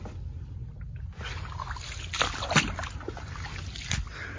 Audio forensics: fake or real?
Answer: real